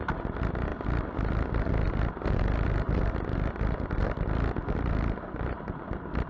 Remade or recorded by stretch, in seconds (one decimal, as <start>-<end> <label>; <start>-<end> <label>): 0.0-6.3 recorded

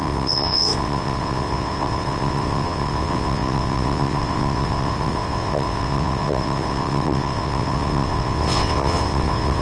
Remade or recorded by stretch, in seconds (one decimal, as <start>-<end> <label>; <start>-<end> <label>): 0.0-9.6 remade

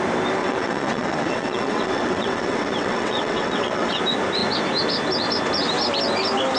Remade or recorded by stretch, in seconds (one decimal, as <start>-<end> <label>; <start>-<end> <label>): 0.0-0.4 recorded; 0.4-4.0 remade; 4.0-6.6 recorded

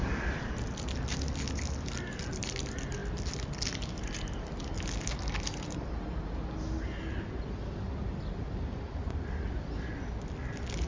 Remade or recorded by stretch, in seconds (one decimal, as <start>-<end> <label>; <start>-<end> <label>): 0.0-10.9 recorded

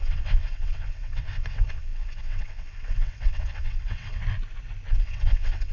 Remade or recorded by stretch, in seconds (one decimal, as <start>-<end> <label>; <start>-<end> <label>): 0.0-4.2 remade; 4.2-4.9 recorded; 4.9-5.7 remade

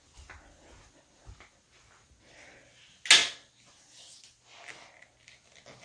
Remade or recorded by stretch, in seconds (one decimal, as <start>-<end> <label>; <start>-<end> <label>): 0.0-5.8 recorded

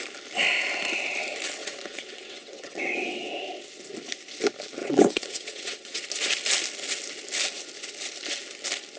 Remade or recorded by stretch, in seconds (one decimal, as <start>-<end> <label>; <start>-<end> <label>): 0.0-1.6 recorded; 1.6-3.3 remade; 3.3-4.8 recorded; 4.8-6.0 remade; 6.0-9.0 recorded